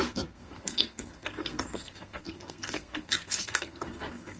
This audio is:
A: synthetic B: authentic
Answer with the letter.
A